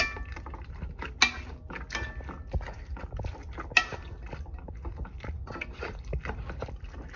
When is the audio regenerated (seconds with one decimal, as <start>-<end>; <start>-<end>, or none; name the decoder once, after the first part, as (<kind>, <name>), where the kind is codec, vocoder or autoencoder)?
3.9-6.4 (vocoder, BigVGAN v2)